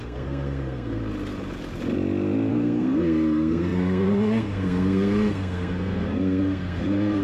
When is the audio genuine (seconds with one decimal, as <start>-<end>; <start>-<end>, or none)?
1.0-2.5